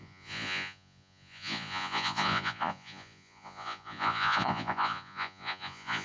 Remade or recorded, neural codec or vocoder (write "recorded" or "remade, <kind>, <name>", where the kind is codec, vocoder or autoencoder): remade, vocoder, Vocos